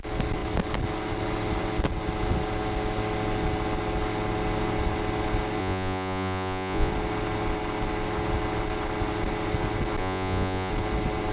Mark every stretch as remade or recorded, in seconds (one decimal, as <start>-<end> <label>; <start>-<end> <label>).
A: 0.0-5.6 recorded; 5.6-6.9 remade; 6.9-10.0 recorded; 10.0-10.7 remade; 10.7-11.3 recorded